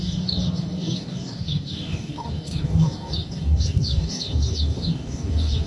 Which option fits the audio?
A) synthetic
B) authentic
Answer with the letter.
A